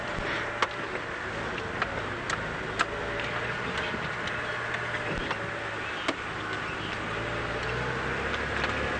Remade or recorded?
recorded